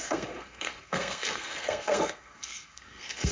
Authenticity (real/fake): fake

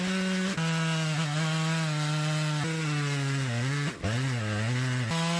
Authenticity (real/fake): real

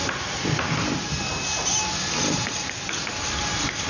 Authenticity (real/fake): real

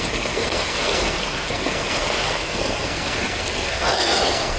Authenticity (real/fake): fake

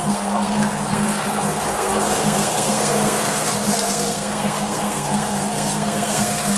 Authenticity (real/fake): fake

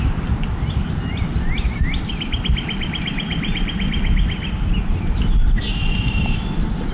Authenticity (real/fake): real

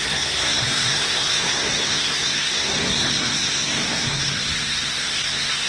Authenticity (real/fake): fake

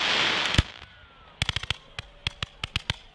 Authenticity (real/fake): real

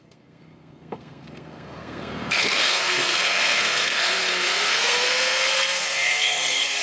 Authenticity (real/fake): fake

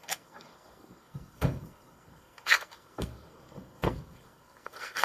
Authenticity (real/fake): fake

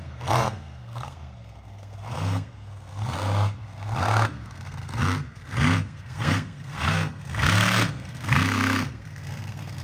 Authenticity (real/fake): fake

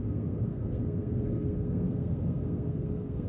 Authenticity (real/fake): fake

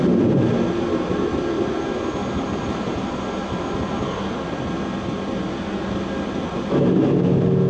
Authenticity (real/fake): real